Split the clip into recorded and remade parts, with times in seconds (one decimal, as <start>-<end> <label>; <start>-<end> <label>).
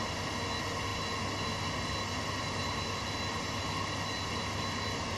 0.0-5.2 recorded